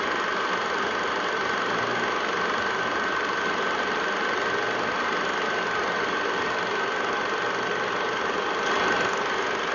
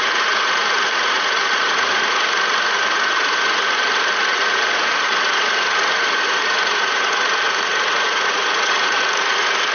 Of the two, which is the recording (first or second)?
first